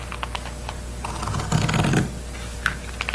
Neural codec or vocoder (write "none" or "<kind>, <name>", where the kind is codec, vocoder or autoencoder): none